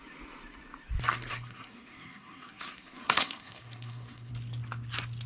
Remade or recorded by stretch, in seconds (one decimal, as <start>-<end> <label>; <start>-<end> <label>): 0.0-1.1 recorded; 1.1-4.3 remade; 4.3-5.3 recorded